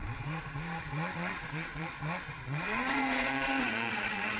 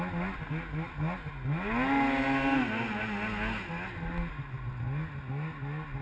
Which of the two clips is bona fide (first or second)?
second